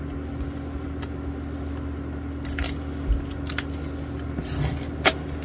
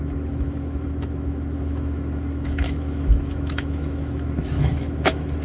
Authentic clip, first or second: first